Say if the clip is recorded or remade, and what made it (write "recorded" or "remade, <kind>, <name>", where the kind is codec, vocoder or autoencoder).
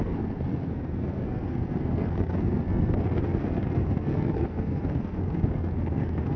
remade, codec, SNAC